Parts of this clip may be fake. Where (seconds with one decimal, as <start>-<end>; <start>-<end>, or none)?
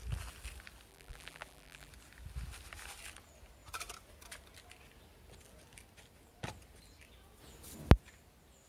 0.9-1.9